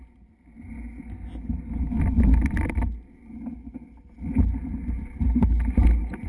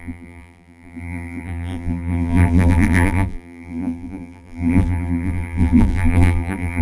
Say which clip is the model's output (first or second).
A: second